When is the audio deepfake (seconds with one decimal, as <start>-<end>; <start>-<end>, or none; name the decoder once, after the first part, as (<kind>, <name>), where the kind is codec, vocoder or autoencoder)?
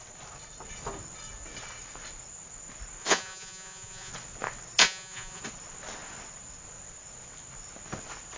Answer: 3.0-4.1 (vocoder, Vocos); 4.8-5.4